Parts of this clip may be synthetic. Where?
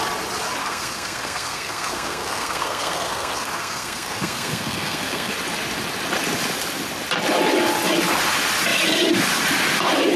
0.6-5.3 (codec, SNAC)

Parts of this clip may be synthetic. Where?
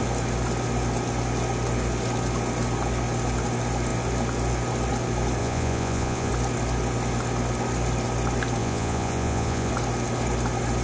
5.4-6.3 (vocoder, Vocos); 8.6-9.7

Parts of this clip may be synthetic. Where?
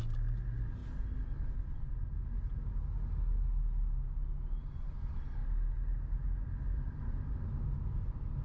none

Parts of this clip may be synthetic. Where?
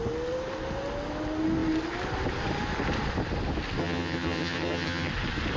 3.8-5.1 (vocoder, HiFi-GAN)